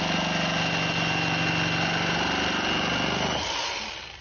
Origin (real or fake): real